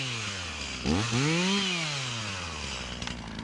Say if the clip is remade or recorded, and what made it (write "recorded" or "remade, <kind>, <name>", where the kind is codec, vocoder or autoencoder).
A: recorded